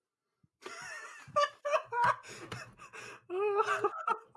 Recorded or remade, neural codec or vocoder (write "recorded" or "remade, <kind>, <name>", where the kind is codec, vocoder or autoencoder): recorded